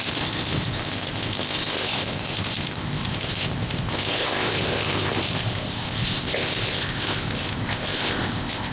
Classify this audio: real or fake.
fake